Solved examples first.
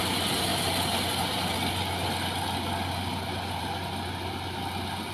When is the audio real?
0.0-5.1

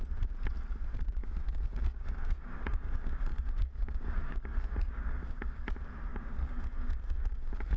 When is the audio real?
0.0-1.2; 5.6-6.1

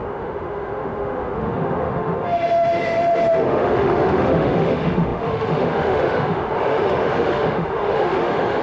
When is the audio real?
none